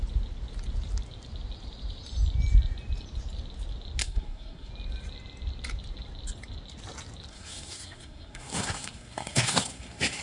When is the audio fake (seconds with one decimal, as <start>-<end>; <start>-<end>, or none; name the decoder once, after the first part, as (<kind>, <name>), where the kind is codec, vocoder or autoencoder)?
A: 4.0-4.7 (codec, SNAC); 7.3-10.2